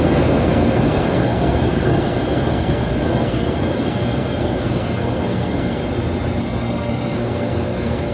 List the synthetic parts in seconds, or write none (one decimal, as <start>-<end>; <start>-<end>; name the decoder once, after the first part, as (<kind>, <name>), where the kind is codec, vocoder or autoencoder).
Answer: 0.0-5.8 (codec, SNAC); 6.4-8.1